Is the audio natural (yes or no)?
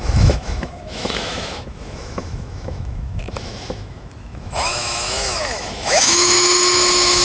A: no